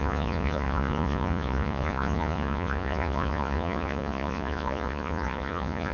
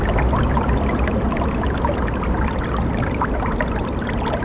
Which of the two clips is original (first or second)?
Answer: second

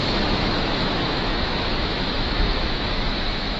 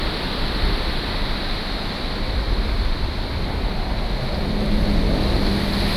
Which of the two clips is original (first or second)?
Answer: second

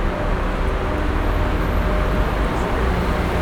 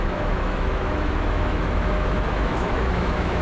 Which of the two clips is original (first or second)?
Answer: first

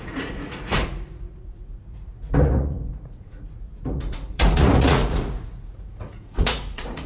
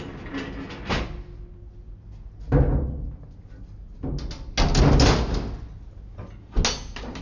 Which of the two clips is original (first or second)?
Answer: second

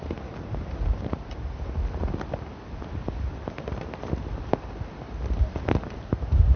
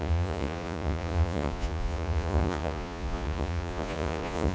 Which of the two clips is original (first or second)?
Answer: first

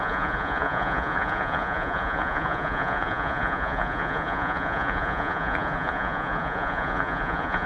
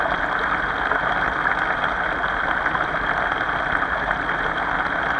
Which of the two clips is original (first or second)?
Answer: second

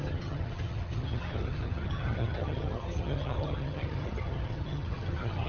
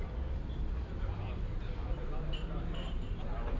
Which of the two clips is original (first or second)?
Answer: second